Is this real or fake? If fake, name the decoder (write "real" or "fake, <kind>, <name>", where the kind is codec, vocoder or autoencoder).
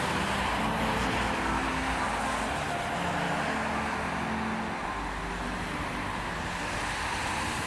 real